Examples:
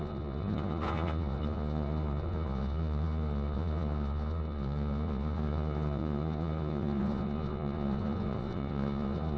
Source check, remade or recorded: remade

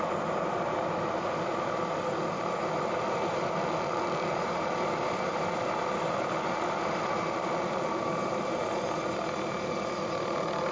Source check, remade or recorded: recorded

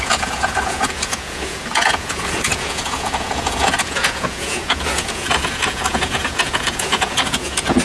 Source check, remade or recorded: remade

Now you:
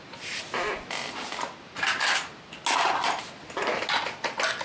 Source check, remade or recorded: recorded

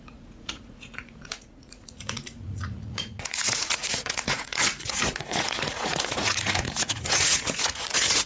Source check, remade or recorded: remade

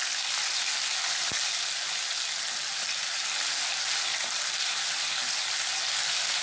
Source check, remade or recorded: recorded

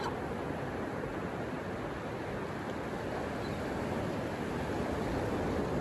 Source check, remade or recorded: recorded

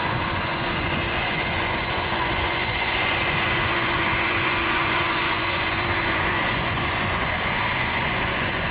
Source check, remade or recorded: remade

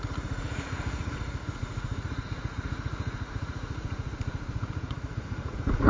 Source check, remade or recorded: remade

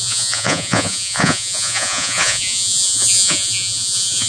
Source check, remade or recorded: remade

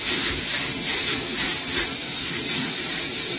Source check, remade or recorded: recorded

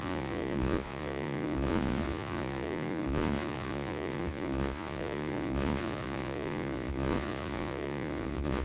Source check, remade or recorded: remade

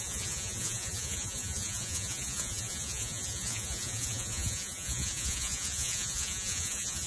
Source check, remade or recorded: remade